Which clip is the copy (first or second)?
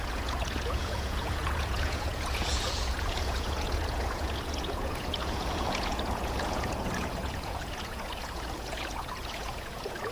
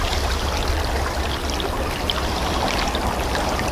first